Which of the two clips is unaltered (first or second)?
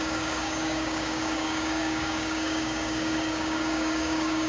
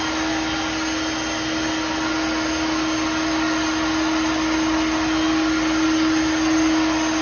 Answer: second